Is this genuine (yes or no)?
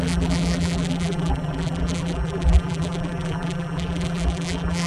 no